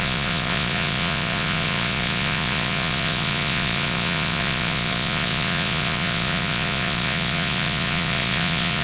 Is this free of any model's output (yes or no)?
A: no